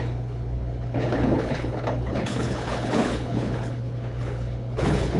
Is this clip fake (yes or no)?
yes